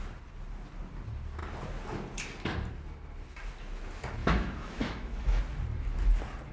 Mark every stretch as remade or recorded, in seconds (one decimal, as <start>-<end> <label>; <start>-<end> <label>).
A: 0.0-4.2 recorded; 4.2-5.4 remade; 5.4-6.5 recorded